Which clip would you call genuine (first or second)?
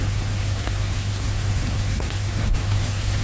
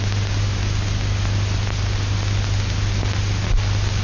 second